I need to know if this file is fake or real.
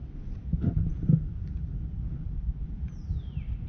real